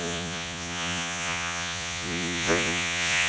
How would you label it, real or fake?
fake